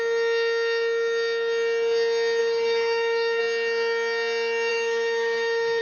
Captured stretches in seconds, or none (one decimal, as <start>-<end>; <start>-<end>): 0.0-2.4; 3.4-4.7